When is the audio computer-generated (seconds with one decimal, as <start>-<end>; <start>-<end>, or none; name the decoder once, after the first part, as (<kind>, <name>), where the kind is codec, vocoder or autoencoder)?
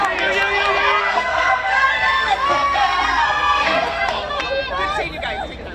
1.0-4.4 (codec, SNAC)